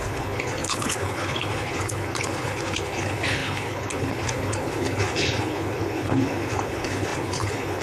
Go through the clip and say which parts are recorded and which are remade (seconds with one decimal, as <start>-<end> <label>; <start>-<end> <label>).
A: 0.0-7.8 remade